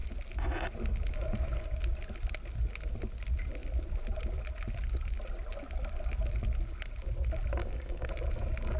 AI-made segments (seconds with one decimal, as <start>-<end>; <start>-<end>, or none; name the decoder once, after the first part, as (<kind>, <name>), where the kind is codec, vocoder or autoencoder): 7.6-8.1 (codec, DAC)